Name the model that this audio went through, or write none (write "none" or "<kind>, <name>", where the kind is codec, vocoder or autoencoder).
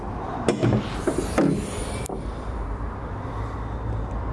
none